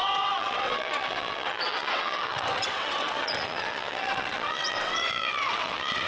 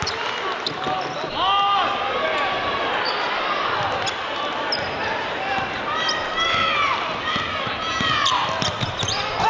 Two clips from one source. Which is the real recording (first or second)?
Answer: second